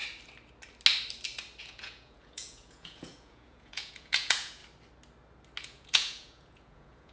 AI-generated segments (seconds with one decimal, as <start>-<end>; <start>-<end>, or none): 1.6-4.6; 5.6-7.1